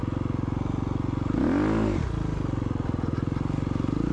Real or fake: real